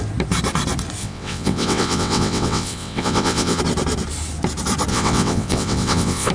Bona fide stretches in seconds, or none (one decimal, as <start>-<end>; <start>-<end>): 0.0-1.0; 3.6-4.9